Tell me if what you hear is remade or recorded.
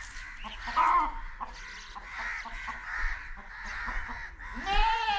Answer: recorded